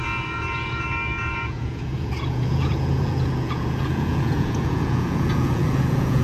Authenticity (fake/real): fake